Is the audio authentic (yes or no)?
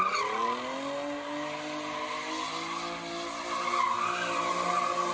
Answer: yes